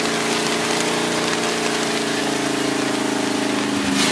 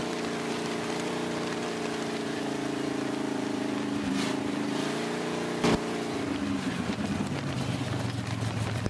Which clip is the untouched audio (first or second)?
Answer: first